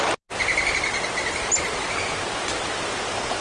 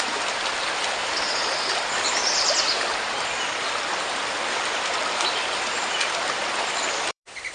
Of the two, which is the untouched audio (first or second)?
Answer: first